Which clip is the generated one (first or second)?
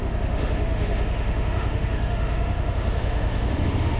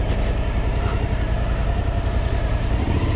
first